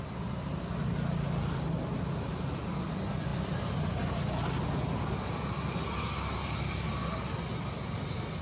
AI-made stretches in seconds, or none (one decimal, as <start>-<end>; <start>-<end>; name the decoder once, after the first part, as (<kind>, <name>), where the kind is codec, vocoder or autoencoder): none